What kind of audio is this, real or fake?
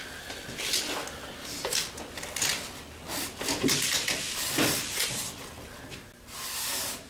real